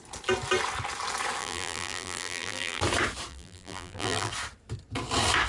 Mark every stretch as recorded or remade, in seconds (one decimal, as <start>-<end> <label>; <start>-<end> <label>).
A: 0.0-1.4 recorded; 1.4-2.8 remade; 2.8-3.3 recorded; 3.3-4.3 remade; 4.3-5.5 recorded